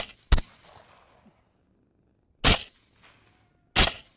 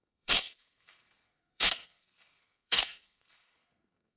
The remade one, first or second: second